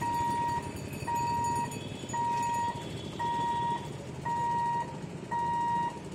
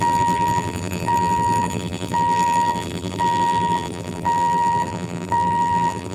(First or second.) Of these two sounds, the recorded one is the first